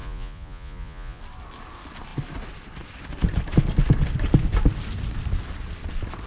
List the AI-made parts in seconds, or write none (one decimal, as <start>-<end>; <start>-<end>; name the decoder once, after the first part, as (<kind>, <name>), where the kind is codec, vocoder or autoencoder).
0.0-1.2 (vocoder, Vocos)